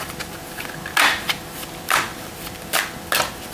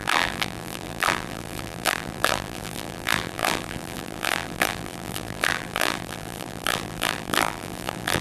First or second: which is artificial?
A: second